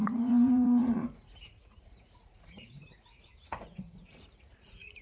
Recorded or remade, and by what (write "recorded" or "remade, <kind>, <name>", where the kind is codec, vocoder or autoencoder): remade, vocoder, Vocos